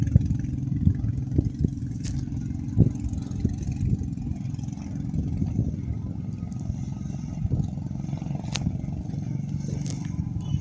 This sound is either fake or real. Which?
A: real